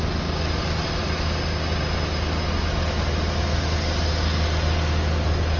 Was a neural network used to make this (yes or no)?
no